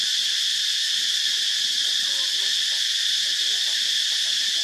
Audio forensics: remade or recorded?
recorded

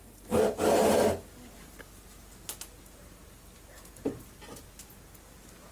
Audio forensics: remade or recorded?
recorded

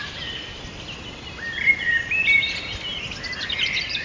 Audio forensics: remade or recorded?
recorded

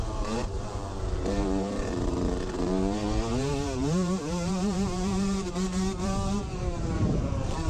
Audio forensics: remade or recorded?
remade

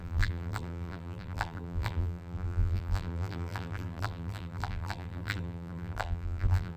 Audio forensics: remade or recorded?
remade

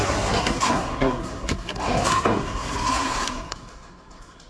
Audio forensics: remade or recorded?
remade